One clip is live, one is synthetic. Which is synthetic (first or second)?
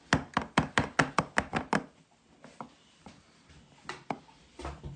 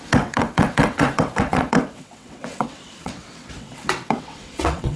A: second